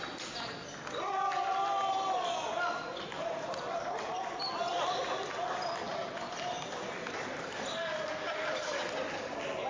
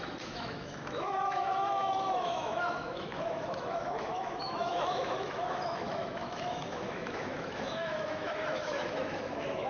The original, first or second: first